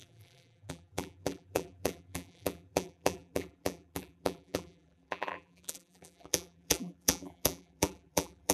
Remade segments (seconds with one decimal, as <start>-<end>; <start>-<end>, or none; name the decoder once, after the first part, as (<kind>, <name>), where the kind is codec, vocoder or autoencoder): 0.0-8.5 (vocoder, BigVGAN v2)